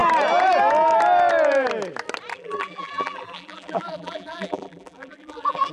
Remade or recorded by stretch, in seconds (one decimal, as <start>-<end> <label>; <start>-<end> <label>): 0.0-2.3 recorded; 2.3-5.7 remade